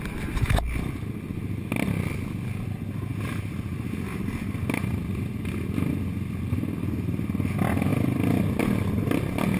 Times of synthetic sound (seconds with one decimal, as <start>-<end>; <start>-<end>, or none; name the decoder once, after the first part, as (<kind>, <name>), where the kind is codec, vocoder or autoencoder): none